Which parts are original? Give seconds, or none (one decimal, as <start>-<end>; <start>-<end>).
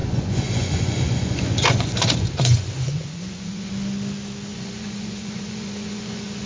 3.7-4.5